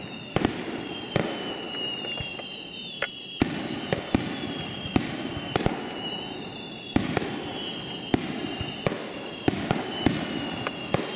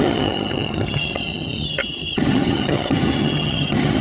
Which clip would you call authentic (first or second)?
first